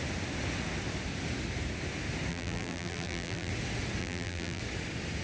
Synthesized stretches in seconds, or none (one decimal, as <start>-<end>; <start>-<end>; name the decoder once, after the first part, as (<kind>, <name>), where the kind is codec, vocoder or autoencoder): 2.3-3.5 (vocoder, BigVGAN v2); 4.0-4.6